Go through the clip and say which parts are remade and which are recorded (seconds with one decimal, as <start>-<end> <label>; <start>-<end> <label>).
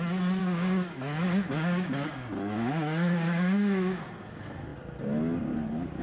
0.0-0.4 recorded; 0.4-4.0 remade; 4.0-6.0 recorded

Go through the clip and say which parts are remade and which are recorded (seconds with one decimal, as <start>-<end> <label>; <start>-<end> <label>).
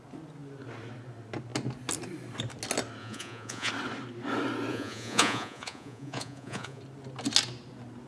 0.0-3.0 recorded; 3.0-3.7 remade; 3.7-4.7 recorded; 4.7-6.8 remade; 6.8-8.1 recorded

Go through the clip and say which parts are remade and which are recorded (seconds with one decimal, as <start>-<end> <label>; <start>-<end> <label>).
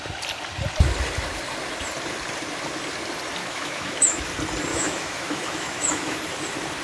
0.0-3.4 recorded; 3.4-4.3 remade; 4.3-4.7 recorded; 4.7-6.2 remade; 6.2-6.8 recorded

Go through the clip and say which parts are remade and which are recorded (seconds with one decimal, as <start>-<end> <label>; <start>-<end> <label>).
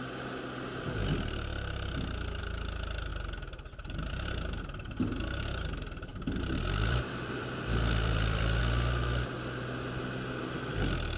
0.0-3.1 recorded; 3.1-4.6 remade; 4.6-6.1 recorded; 6.1-8.6 remade; 8.6-11.2 recorded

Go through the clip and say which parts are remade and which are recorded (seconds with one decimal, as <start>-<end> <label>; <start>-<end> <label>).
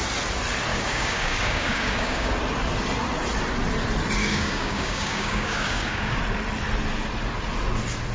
0.0-0.7 recorded; 0.7-2.3 remade; 2.3-4.2 recorded; 4.2-6.2 remade; 6.2-8.1 recorded